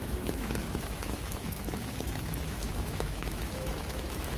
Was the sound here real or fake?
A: fake